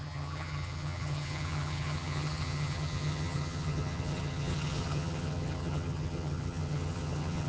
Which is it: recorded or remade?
remade